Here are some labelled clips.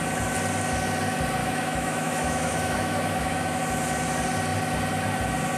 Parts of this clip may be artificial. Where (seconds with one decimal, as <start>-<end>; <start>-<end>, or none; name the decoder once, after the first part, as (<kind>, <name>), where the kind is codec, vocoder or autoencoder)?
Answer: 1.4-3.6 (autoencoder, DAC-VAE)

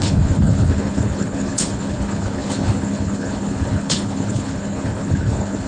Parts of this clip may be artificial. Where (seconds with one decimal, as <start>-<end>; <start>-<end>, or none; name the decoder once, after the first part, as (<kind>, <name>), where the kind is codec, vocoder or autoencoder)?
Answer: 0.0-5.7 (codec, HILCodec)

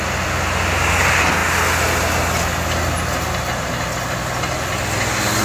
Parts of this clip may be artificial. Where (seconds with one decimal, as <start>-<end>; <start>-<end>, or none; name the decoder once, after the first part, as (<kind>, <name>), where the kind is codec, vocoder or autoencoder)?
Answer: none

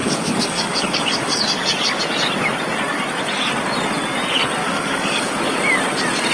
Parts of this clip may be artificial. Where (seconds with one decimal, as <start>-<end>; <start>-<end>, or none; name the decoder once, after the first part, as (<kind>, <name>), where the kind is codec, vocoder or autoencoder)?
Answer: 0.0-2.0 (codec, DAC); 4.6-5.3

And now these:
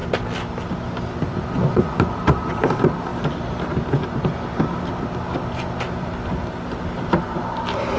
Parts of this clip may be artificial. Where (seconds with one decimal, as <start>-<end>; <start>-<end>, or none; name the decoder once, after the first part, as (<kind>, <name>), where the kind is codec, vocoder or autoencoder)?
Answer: 1.3-2.1 (vocoder, Vocos)

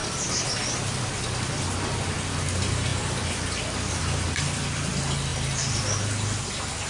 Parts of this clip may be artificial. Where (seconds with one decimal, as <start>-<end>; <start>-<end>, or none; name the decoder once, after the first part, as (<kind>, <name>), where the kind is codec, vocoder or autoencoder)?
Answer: none

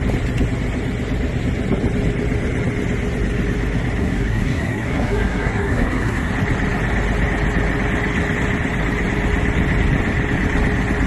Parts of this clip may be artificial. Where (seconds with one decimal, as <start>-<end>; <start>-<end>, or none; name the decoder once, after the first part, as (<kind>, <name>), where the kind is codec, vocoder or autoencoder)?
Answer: 4.0-6.3 (codec, SNAC)